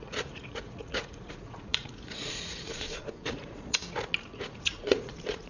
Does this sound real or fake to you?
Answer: fake